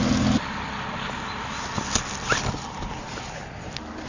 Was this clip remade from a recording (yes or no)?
no